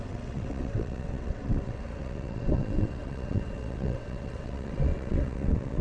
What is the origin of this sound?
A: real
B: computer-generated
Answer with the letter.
B